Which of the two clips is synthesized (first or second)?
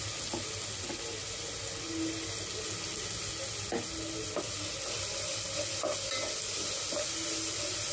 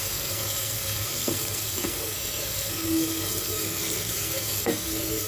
second